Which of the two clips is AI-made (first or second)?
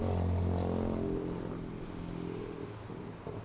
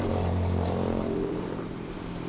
second